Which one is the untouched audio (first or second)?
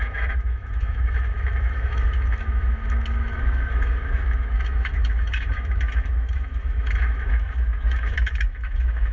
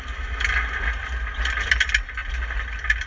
second